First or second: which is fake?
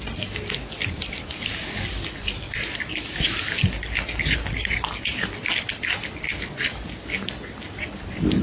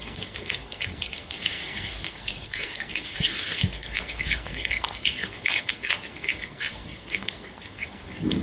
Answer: second